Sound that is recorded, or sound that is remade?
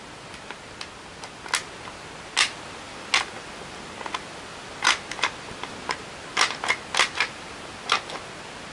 recorded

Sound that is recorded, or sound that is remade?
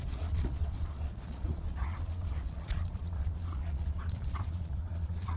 remade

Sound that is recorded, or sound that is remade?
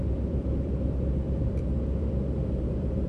remade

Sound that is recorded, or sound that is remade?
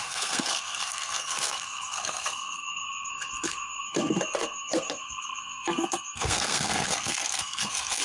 remade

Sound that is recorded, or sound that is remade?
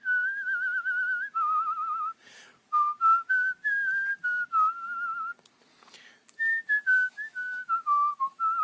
recorded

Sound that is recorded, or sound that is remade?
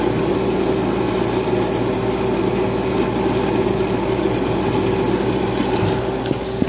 recorded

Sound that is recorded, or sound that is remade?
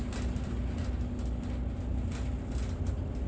recorded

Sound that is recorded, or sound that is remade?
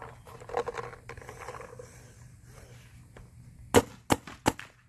recorded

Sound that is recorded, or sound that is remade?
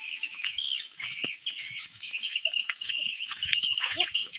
remade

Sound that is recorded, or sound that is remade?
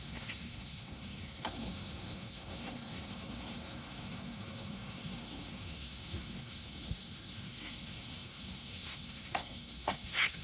remade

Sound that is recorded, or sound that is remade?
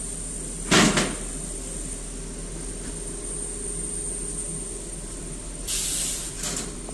recorded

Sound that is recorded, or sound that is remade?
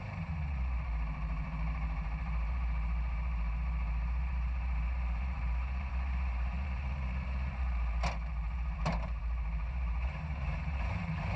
remade